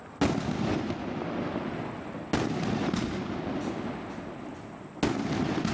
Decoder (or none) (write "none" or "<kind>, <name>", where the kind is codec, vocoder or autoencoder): none